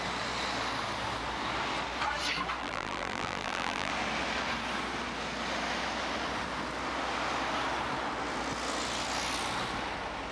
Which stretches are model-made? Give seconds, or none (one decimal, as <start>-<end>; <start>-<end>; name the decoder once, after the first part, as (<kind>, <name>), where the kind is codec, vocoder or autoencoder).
2.6-3.9 (vocoder, BigVGAN v2)